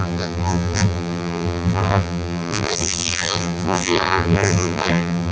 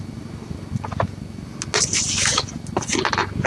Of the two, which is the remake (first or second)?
first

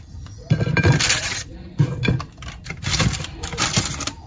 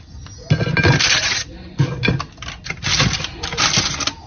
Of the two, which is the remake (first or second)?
first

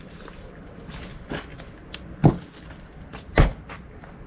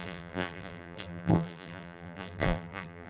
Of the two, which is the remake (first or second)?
second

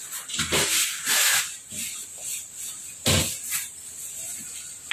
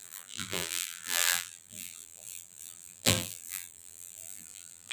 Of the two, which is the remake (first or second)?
second